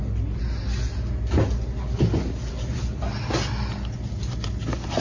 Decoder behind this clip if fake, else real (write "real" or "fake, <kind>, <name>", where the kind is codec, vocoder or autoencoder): real